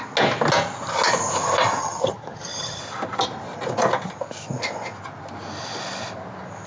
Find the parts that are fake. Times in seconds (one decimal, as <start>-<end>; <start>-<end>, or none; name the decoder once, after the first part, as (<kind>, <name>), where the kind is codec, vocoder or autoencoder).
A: 1.8-2.8 (vocoder, HiFi-GAN)